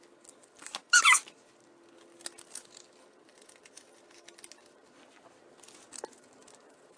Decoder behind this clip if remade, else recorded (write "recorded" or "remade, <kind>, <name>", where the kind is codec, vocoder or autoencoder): recorded